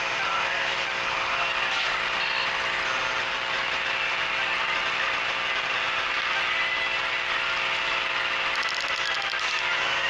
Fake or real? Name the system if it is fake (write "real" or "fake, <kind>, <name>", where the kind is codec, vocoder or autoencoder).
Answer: real